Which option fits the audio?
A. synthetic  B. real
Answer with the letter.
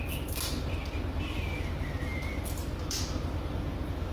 B